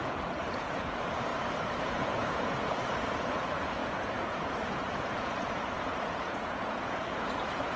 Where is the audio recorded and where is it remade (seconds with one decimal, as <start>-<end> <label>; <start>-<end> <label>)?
0.0-1.3 remade; 1.3-1.8 recorded; 1.8-7.8 remade